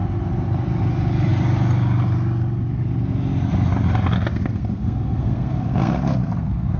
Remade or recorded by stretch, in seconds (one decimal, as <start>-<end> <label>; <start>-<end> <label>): 0.0-4.3 recorded; 4.3-6.8 remade